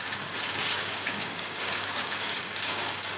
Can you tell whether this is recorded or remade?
remade